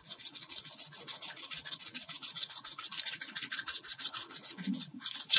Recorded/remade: remade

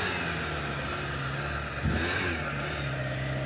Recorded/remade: recorded